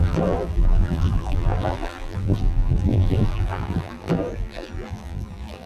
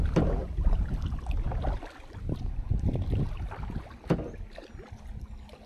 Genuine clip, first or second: second